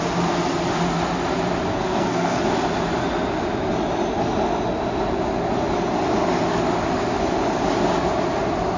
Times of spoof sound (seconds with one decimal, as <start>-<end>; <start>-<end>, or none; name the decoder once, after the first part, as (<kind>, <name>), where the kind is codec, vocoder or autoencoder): 1.7-2.4 (codec, SNAC)

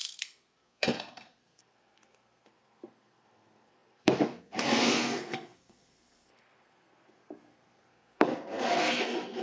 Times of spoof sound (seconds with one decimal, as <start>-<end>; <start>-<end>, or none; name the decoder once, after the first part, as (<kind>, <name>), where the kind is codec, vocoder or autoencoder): 0.0-9.4 (codec, SNAC)

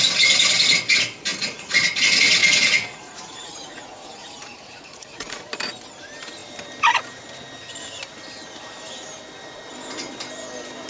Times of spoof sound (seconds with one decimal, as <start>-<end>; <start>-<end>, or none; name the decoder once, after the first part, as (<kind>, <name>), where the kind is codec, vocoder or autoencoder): 1.3-1.8 (vocoder, Vocos); 2.4-5.4

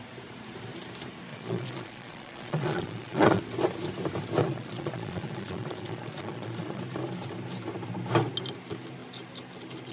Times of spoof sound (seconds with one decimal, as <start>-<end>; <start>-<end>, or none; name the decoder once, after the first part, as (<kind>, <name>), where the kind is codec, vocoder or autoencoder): 1.3-3.4 (vocoder, Vocos); 4.4-6.8

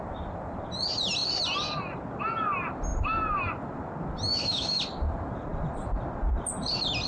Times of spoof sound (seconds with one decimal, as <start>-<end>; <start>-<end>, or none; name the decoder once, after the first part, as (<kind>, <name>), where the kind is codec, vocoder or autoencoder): 4.3-4.8 (autoencoder, DAC-VAE)

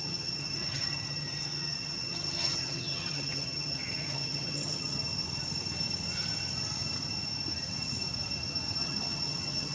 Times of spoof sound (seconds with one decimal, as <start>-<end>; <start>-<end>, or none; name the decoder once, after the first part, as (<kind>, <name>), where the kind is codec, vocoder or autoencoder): 0.0-5.0 (vocoder, HiFi-GAN); 8.8-9.7

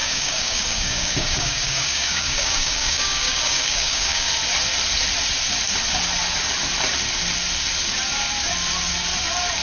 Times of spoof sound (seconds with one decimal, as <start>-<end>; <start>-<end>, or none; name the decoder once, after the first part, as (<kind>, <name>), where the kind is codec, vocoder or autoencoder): 0.0-4.3 (codec, DAC)